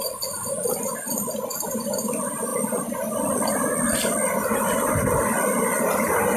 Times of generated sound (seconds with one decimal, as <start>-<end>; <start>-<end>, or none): none